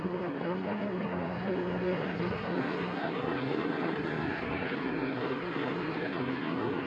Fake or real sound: fake